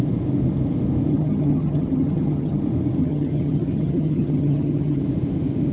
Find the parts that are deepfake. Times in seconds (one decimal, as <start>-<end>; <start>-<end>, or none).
1.1-2.6; 3.0-5.0